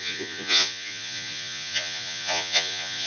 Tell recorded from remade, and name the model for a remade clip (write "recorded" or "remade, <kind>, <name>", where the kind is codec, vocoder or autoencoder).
remade, vocoder, Vocos